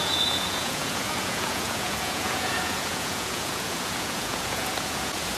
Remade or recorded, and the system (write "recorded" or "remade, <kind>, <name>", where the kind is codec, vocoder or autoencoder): remade, vocoder, Vocos